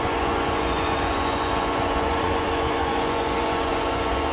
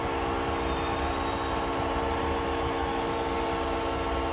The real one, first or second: second